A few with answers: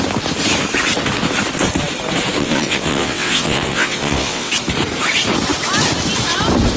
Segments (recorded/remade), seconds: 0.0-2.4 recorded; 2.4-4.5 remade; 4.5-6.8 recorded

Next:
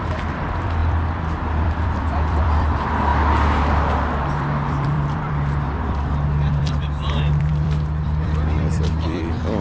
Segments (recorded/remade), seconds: 0.0-3.1 remade; 3.1-3.9 recorded; 3.9-9.6 remade

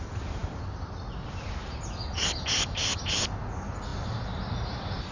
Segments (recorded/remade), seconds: 0.0-5.1 recorded

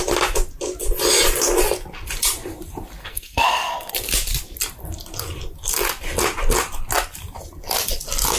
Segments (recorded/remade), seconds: 0.0-3.0 recorded; 3.0-3.9 remade; 3.9-8.4 recorded

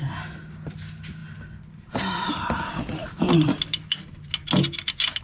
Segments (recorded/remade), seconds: 0.0-5.2 recorded

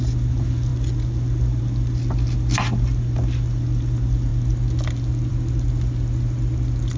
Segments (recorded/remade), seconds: 0.0-7.0 recorded

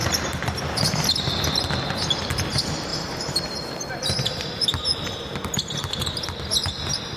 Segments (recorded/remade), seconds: 0.0-1.2 remade; 1.2-2.9 recorded; 2.9-4.7 remade; 4.7-7.2 recorded